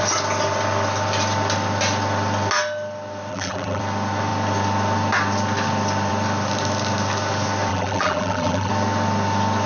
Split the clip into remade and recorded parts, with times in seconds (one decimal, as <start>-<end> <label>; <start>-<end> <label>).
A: 0.0-3.3 recorded; 3.3-3.8 remade; 3.8-7.7 recorded; 7.7-8.7 remade; 8.7-9.7 recorded